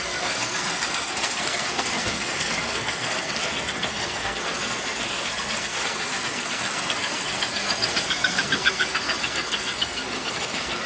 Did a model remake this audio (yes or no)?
yes